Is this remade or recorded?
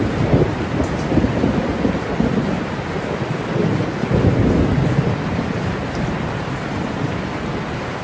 recorded